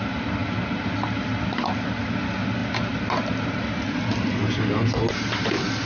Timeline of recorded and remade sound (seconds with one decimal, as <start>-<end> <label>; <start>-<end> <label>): 0.0-5.9 recorded